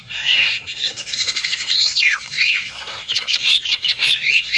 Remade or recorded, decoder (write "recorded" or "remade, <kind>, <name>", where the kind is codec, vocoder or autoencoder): remade, codec, SNAC